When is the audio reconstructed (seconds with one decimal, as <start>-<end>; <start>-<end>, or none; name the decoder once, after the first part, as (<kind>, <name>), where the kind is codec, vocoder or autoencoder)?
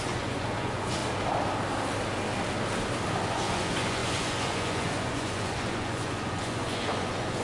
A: 0.0-1.0 (vocoder, Vocos); 3.3-7.4